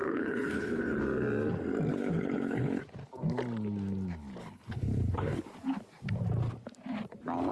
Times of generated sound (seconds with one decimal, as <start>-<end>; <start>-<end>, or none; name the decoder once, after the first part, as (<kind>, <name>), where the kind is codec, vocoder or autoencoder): 0.0-1.0 (codec, HILCodec); 1.9-2.8; 4.4-5.4